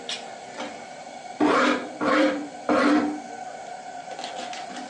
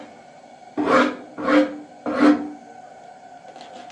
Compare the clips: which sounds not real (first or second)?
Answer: first